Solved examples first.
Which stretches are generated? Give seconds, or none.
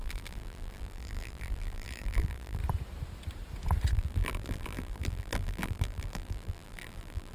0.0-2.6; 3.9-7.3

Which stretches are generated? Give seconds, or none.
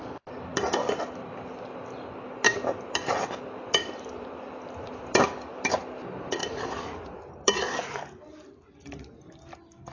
0.5-1.2; 2.5-5.8; 6.4-8.2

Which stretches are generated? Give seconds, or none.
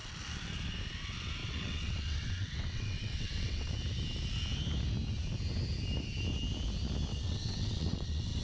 1.4-3.7; 7.1-8.4